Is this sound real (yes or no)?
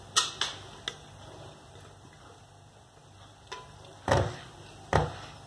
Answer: yes